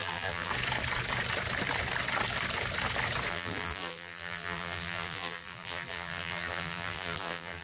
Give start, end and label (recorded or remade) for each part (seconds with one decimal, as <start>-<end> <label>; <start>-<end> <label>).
0.0-0.5 remade; 0.5-3.3 recorded; 3.3-7.6 remade